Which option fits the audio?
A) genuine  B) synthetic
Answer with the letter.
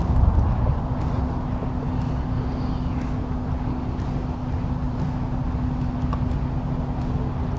A